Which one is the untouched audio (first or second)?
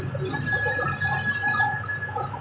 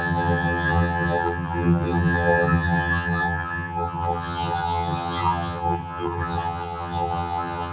first